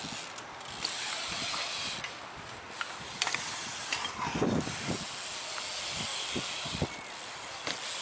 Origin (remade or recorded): recorded